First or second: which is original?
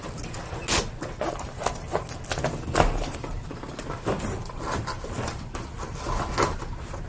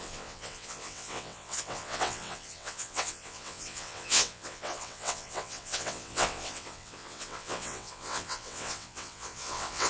first